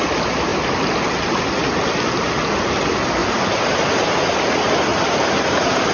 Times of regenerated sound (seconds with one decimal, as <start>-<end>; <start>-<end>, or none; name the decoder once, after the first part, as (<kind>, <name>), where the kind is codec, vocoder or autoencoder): 4.9-5.9 (vocoder, BigVGAN v2)